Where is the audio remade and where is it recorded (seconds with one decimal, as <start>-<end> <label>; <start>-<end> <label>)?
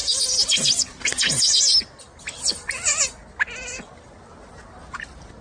0.0-5.4 recorded